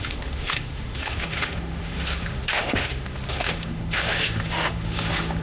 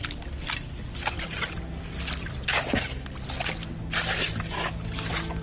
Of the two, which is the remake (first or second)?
first